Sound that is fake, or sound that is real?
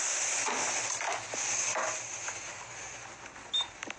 real